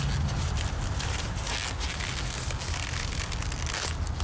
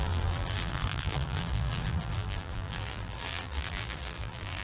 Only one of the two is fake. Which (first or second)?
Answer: second